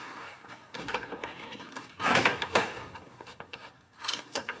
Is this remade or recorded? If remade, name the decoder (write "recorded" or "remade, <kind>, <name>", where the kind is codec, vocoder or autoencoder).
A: remade, codec, SNAC